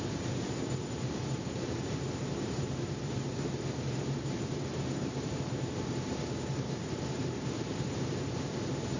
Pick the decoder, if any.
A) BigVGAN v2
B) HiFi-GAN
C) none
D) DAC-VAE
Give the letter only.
A